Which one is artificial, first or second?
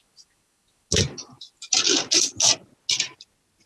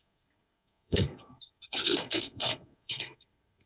second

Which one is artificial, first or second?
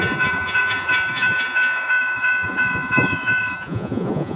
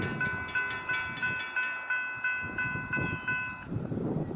first